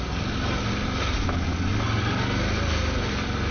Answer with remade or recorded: recorded